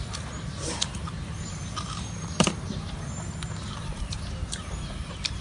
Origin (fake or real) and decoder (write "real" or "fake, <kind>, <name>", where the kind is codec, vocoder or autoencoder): fake, vocoder, BigVGAN v2